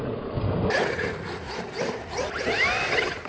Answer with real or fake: real